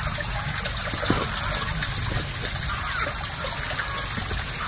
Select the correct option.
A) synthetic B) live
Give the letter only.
B